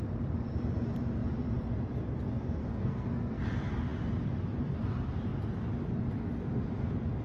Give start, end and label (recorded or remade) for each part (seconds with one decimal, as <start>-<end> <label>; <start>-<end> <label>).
0.0-2.6 recorded; 2.6-3.4 remade; 3.4-7.2 recorded